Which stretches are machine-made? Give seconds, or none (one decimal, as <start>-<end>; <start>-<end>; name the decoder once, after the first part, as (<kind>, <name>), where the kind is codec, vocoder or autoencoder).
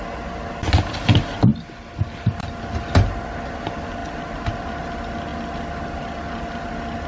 5.3-6.0 (vocoder, BigVGAN v2)